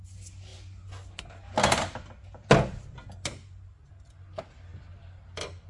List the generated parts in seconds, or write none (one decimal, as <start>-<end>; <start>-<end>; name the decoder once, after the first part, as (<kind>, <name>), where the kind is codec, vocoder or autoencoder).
none